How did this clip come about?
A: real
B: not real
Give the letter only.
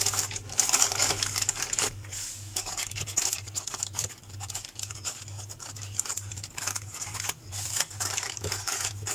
B